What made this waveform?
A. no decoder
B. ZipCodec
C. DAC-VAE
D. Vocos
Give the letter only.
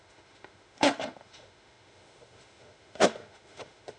C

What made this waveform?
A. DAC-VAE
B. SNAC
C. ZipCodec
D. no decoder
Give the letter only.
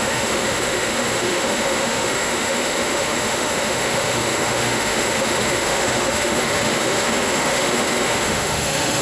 A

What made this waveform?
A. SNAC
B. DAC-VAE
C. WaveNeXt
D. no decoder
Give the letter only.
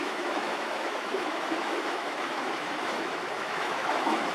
B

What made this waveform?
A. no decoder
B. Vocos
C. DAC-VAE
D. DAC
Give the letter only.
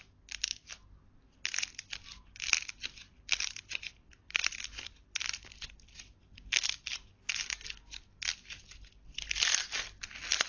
A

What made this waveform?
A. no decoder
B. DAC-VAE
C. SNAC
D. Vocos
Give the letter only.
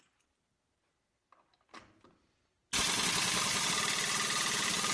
A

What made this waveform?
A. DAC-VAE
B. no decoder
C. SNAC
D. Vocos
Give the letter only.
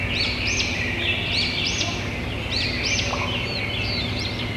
B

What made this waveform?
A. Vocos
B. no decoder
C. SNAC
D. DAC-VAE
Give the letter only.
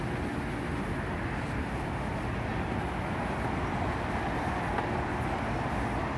B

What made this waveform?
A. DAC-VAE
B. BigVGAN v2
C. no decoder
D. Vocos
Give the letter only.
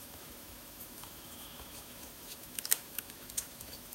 A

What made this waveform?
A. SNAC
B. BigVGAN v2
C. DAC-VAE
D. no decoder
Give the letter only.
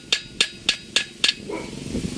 D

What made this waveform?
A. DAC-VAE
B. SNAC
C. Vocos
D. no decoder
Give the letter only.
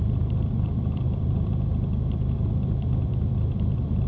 D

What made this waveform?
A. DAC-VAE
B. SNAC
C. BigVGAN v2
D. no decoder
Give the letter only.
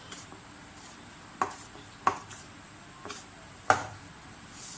D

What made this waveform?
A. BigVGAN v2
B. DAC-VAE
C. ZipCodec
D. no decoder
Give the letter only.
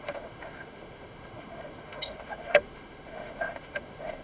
B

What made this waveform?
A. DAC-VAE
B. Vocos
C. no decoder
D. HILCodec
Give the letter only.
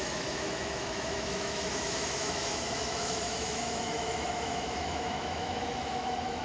A